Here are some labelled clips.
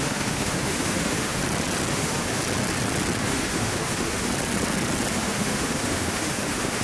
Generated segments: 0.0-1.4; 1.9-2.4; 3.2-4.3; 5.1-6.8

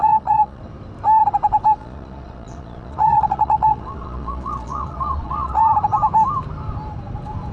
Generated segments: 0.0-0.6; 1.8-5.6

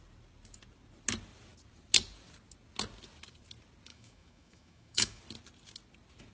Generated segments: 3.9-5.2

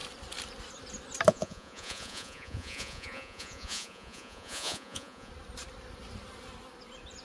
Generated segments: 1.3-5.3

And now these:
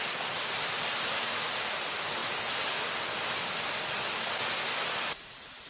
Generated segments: 0.0-2.2

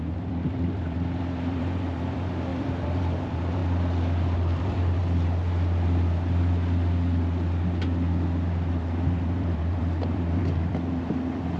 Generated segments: 0.0-3.6; 4.6-5.0; 8.7-11.6

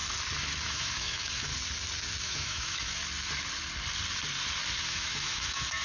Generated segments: 0.6-1.5; 2.2-3.0; 4.8-5.8